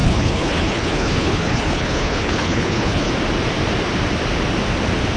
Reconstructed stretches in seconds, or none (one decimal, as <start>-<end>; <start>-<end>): 0.0-3.1